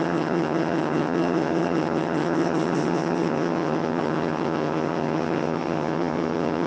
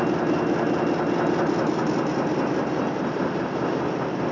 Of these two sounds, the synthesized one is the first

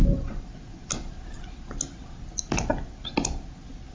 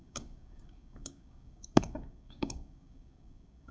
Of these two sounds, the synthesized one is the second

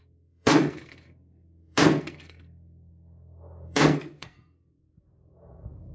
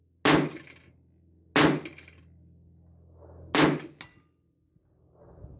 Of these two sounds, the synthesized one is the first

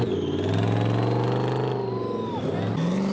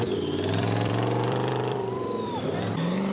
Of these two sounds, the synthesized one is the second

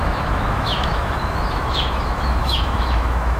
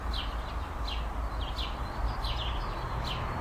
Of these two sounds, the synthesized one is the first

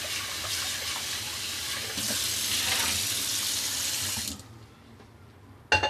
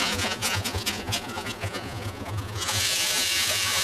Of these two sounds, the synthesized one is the second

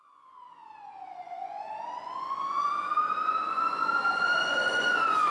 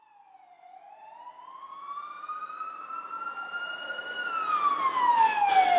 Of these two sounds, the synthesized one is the first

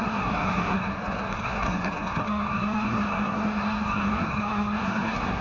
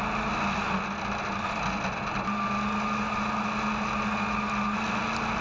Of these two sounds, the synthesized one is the first